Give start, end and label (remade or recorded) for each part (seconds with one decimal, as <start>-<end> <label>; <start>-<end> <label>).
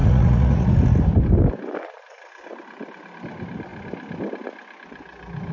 0.0-0.7 remade; 0.7-5.5 recorded